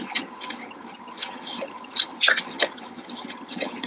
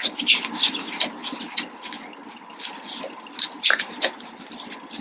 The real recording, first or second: second